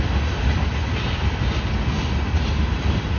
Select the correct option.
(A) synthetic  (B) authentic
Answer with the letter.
B